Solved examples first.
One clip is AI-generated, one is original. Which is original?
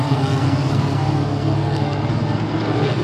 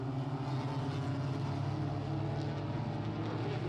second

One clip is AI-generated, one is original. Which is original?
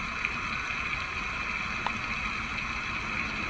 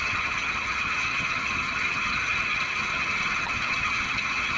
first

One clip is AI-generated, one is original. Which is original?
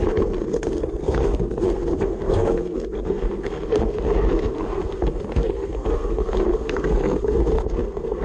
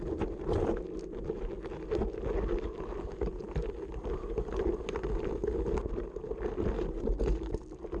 second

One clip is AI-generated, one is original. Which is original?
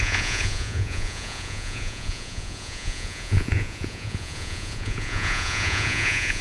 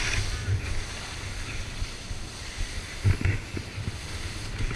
second